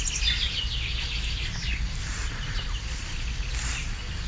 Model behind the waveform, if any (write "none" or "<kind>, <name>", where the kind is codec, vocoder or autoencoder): none